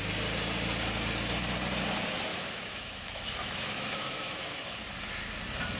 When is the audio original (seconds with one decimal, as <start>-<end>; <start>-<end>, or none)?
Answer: 0.0-2.3; 4.8-5.8